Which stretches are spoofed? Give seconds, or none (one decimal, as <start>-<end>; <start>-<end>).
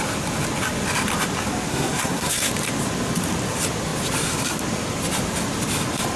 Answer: 1.7-2.5